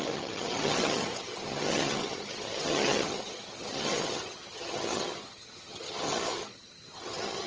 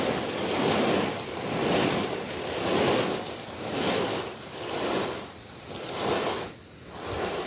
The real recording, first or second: second